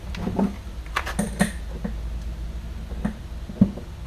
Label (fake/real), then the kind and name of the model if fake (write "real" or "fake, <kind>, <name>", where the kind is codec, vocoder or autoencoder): real